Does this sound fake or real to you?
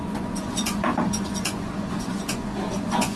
fake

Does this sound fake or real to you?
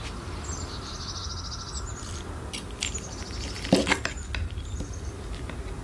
real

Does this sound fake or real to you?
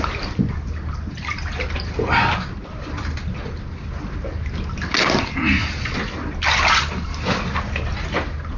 real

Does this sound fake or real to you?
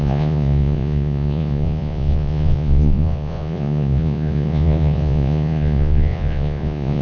fake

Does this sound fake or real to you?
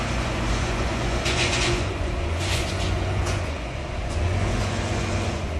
fake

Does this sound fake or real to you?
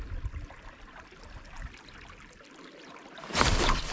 real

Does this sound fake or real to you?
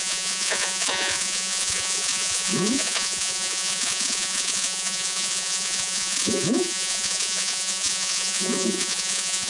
fake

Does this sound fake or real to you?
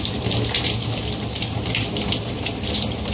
real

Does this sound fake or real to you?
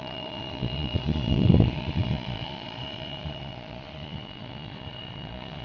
fake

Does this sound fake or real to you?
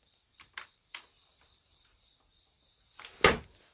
real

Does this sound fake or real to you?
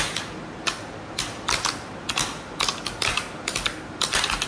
real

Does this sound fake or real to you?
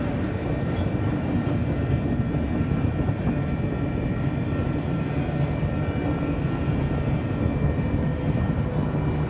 real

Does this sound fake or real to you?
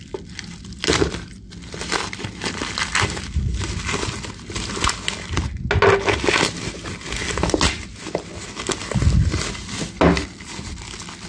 real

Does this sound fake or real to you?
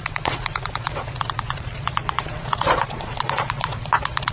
fake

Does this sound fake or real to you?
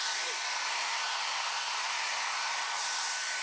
real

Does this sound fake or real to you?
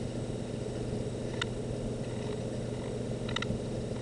real